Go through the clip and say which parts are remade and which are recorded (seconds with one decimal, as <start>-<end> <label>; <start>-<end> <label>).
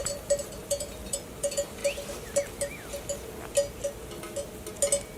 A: 0.0-1.8 remade; 1.8-5.2 recorded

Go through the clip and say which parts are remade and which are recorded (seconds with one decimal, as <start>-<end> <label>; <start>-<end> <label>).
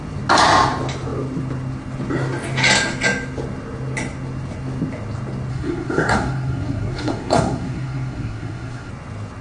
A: 0.0-5.5 recorded; 5.5-8.9 remade; 8.9-9.4 recorded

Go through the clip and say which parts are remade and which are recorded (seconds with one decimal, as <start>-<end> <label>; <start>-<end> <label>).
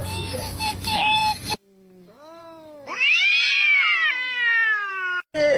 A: 0.0-3.3 remade; 3.3-4.9 recorded; 4.9-5.6 remade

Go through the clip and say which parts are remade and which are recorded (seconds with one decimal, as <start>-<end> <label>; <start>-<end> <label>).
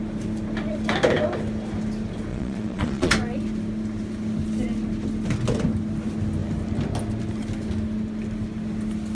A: 0.0-2.3 recorded; 2.3-3.1 remade; 3.1-9.1 recorded